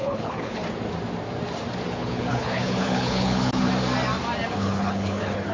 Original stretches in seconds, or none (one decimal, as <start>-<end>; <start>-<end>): 0.6-1.9; 3.7-4.5